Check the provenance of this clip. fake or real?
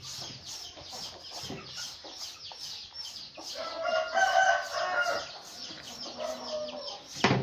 real